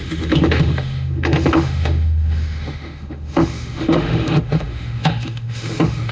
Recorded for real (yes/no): no